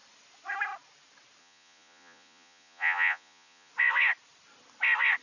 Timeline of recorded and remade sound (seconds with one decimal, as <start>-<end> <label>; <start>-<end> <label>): 0.0-1.4 recorded; 1.4-3.7 remade; 3.7-5.2 recorded